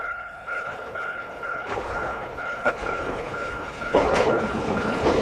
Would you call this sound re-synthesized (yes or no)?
yes